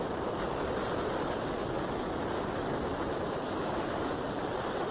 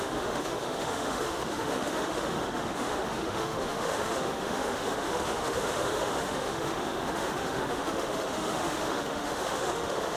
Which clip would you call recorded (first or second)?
first